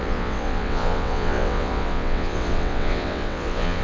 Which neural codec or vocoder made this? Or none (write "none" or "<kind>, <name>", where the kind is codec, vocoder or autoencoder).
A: vocoder, WaveNeXt